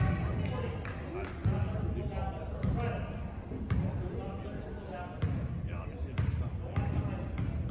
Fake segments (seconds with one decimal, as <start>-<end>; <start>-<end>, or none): none